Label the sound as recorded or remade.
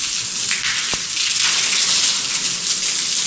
recorded